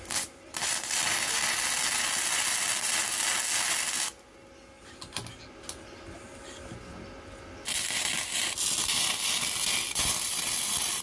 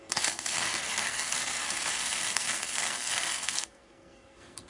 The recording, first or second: first